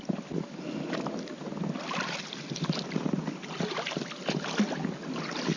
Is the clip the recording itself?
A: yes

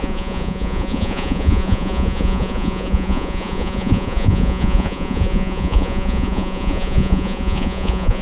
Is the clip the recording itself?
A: no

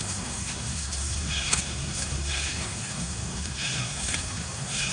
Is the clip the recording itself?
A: no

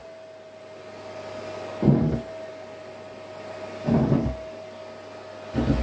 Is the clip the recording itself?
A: yes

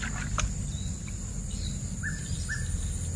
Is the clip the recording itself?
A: yes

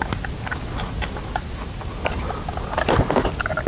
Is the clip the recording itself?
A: yes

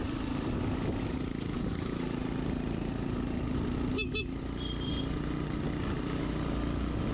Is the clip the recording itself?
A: yes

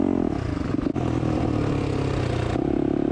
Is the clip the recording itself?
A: yes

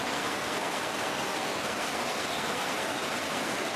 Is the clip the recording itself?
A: no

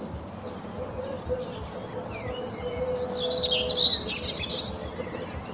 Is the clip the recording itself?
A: yes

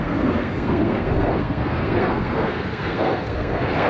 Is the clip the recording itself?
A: no